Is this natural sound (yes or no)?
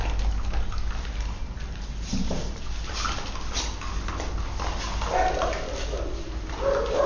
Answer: yes